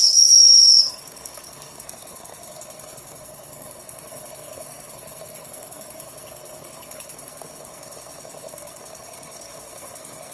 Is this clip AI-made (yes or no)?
yes